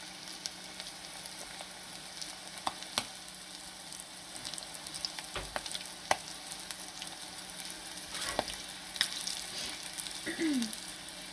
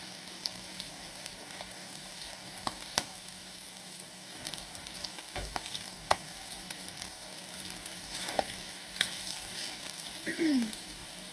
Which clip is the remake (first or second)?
second